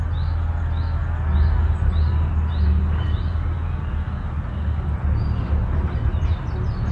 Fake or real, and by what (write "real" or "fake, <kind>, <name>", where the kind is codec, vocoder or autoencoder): real